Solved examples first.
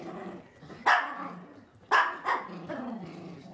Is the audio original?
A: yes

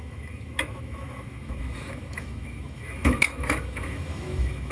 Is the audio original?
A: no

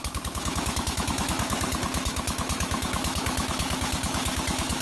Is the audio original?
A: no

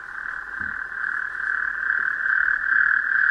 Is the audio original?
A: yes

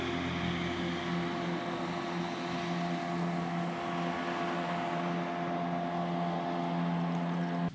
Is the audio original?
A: yes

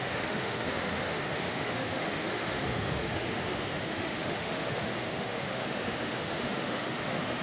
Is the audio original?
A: no